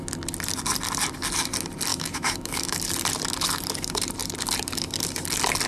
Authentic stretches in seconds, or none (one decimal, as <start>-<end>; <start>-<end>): 0.0-1.9; 2.8-5.7